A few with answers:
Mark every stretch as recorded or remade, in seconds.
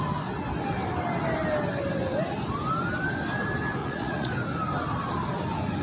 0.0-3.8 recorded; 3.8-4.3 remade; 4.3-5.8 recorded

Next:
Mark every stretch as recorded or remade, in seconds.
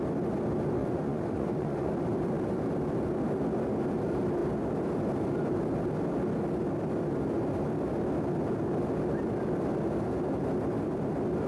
0.0-0.8 recorded; 0.8-1.9 remade; 1.9-11.5 recorded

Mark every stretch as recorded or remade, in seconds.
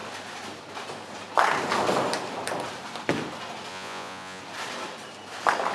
0.0-3.7 recorded; 3.7-4.4 remade; 4.4-5.7 recorded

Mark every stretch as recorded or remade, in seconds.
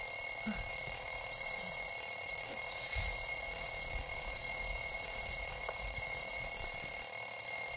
0.0-0.7 recorded; 0.7-1.9 remade; 1.9-2.3 recorded; 2.3-6.5 remade; 6.5-7.8 recorded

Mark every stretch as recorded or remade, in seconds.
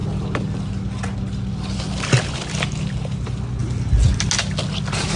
0.0-5.2 recorded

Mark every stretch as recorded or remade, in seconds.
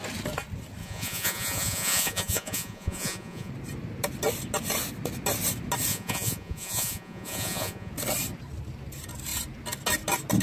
0.0-0.8 recorded; 0.8-3.5 remade; 3.5-5.9 recorded; 5.9-7.9 remade; 7.9-10.4 recorded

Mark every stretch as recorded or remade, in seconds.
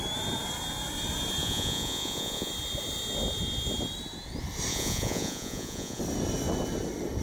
0.0-1.4 recorded; 1.4-2.5 remade; 2.5-4.7 recorded; 4.7-6.0 remade; 6.0-7.2 recorded